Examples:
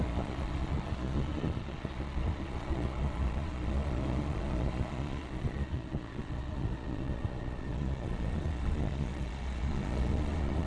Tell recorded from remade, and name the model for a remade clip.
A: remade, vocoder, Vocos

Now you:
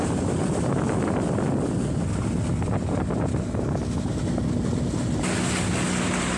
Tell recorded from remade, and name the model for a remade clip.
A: recorded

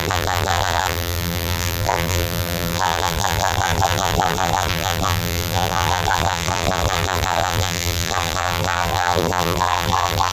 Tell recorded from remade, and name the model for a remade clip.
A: remade, vocoder, BigVGAN v2